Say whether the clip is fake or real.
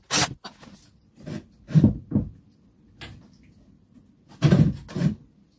real